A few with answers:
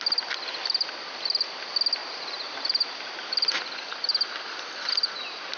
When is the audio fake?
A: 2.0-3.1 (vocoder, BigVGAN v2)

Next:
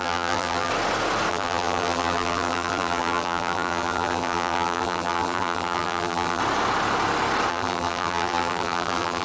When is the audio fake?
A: 0.0-0.7 (vocoder, BigVGAN v2); 1.3-6.4; 7.5-9.2

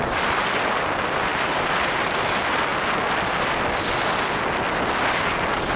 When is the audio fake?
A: none

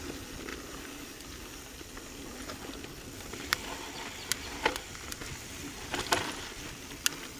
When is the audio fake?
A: 5.2-6.3 (vocoder, BigVGAN v2)